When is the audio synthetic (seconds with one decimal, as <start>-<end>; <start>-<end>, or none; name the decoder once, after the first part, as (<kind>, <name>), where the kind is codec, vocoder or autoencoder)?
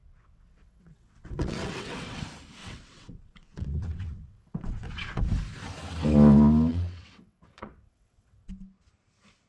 0.0-2.2 (vocoder, WaveNeXt); 2.6-5.2; 6.7-8.5